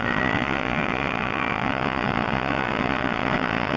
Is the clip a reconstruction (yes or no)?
yes